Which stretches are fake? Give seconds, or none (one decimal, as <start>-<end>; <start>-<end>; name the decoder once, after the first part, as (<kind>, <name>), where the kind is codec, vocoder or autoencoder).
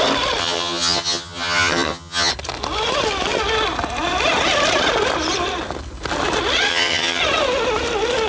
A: 0.4-2.3 (vocoder, HiFi-GAN); 6.7-7.2